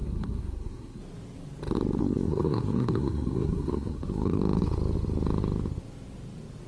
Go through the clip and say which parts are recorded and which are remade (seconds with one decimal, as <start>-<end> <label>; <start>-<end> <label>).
0.0-1.0 remade; 1.0-2.0 recorded; 2.0-4.4 remade; 4.4-6.7 recorded